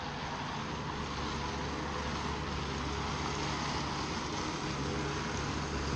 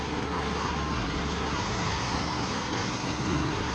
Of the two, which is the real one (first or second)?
first